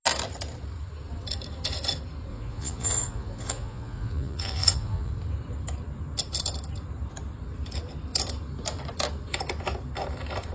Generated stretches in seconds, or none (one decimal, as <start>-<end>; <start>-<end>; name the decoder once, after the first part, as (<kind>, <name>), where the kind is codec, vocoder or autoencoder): 2.3-5.1 (vocoder, Vocos)